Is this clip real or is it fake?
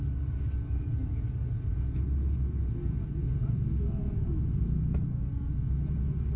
real